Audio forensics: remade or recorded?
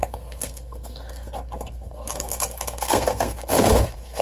remade